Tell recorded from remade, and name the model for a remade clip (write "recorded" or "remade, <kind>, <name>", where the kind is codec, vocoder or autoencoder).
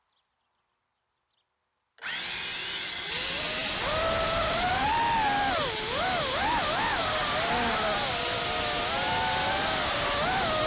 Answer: recorded